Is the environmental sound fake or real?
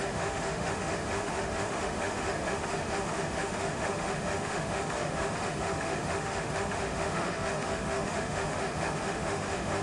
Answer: fake